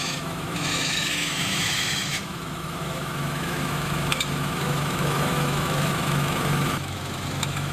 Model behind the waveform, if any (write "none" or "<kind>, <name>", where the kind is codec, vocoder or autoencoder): autoencoder, DAC-VAE